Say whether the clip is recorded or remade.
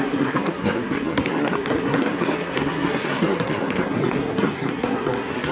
remade